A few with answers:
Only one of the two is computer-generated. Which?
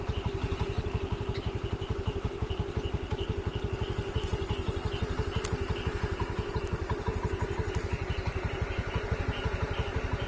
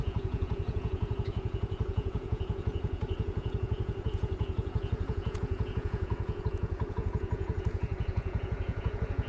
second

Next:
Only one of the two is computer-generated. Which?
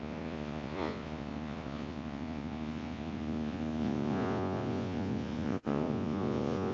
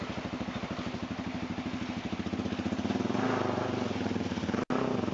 first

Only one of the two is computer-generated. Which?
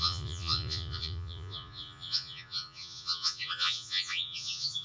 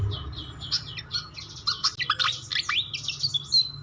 first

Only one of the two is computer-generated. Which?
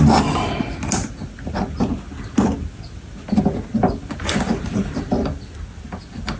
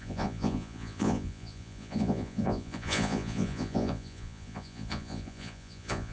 second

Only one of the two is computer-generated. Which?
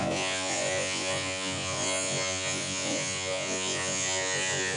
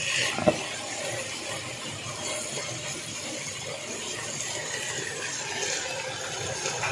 first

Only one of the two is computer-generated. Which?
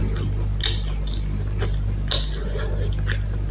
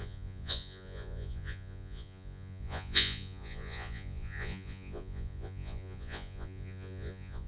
second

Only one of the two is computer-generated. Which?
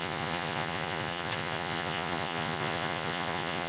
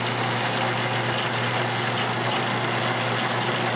first